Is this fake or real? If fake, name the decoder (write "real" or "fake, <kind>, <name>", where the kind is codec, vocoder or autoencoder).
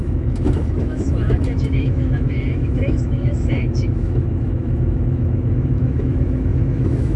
fake, autoencoder, DAC-VAE